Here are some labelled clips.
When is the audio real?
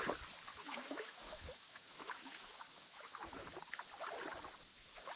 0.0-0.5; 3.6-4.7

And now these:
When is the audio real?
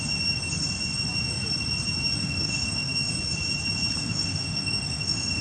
0.0-2.2; 3.1-4.0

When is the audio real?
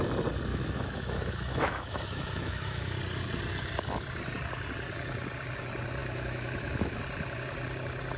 0.0-0.5; 2.9-6.0; 7.0-8.2